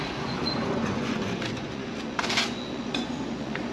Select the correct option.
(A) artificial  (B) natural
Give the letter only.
A